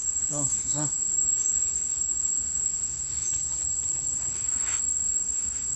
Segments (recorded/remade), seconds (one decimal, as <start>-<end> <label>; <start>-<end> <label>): 0.0-3.3 remade; 3.3-4.3 recorded; 4.3-5.8 remade

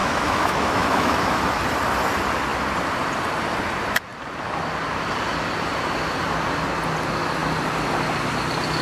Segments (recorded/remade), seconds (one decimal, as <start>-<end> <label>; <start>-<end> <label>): 0.0-1.5 remade; 1.5-8.8 recorded

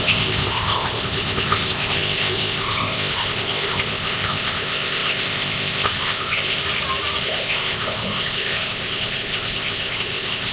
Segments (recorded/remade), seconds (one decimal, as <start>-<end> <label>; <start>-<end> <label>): 0.0-6.6 remade; 6.6-7.2 recorded; 7.2-10.5 remade

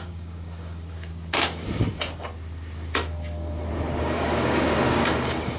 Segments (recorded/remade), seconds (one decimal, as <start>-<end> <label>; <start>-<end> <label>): 0.0-1.1 remade; 1.1-4.0 recorded; 4.0-5.6 remade

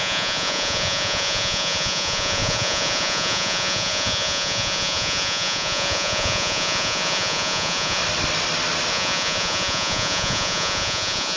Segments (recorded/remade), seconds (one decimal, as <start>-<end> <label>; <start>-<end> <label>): 0.0-8.0 remade; 8.0-8.9 recorded; 8.9-11.4 remade

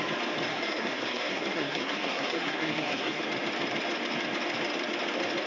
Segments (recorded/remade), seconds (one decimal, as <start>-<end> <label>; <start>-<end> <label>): 0.0-0.5 recorded; 0.5-3.2 remade; 3.2-5.5 recorded

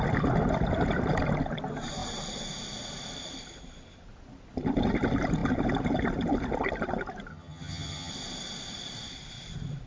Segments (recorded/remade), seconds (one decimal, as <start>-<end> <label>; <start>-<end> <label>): 0.0-7.3 recorded; 7.3-8.1 remade; 8.1-9.9 recorded